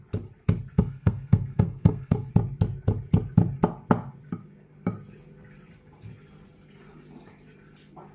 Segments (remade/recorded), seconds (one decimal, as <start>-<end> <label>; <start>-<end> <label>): 0.0-0.8 recorded; 0.8-2.3 remade; 2.3-8.1 recorded